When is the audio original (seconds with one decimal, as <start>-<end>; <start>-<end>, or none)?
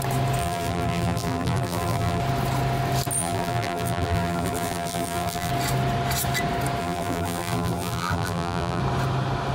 0.0-0.4; 2.2-3.2; 5.5-6.8; 8.8-9.5